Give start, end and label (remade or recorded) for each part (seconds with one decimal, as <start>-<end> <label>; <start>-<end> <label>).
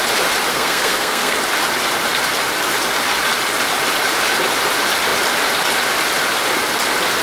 0.0-0.5 recorded; 0.5-1.4 remade; 1.4-7.2 recorded